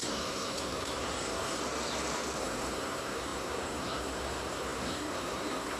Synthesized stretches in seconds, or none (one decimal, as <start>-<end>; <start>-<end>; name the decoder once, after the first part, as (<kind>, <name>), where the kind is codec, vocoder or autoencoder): 0.0-1.6 (codec, SNAC); 2.4-5.8